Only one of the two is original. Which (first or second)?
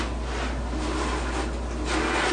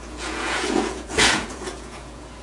first